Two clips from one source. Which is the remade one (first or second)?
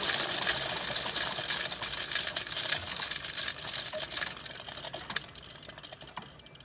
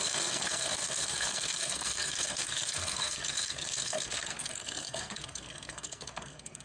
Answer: second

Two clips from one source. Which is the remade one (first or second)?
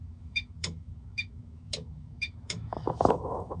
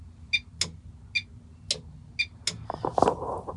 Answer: first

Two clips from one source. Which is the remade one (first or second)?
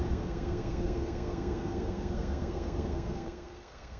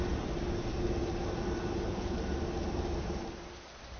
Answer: first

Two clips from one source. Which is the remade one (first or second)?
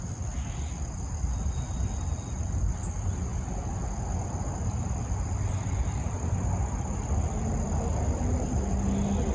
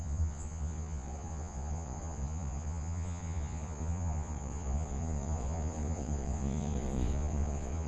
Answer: second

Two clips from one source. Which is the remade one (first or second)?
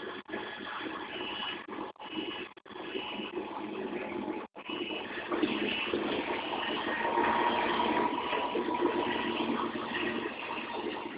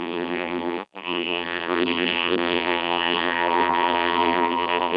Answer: second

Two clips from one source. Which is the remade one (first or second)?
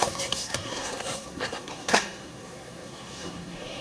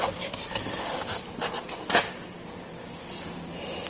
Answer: first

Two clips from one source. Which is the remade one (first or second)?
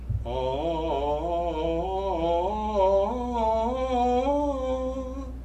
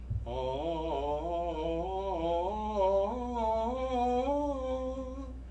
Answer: second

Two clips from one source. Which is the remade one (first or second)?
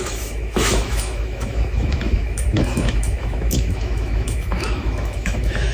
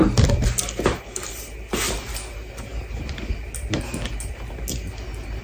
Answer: first